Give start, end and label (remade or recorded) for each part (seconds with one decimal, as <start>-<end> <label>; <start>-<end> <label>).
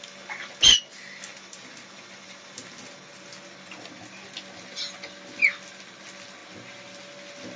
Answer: 0.0-7.6 recorded